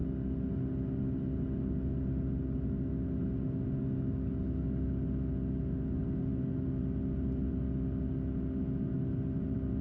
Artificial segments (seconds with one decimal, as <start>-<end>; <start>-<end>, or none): none